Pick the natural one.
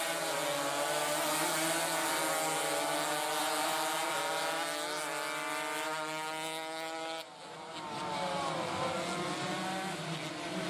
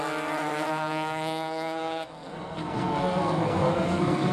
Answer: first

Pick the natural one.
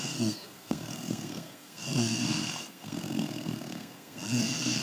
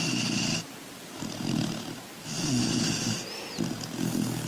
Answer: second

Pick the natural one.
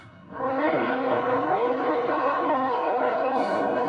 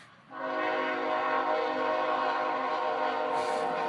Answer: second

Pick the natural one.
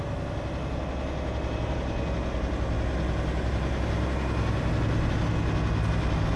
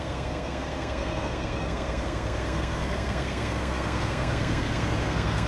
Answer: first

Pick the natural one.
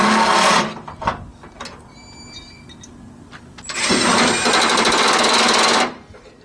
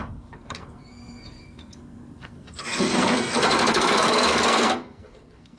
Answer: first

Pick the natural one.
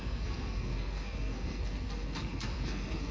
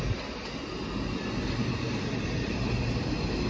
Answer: second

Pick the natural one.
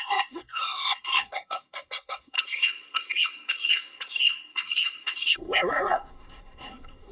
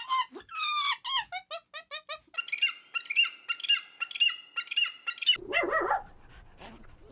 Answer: second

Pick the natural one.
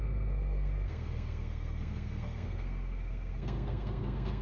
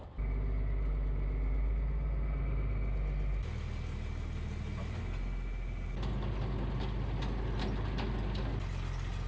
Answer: second